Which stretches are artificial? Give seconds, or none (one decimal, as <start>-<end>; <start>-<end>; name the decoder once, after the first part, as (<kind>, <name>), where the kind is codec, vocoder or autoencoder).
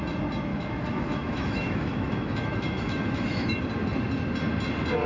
0.5-3.6 (autoencoder, DAC-VAE)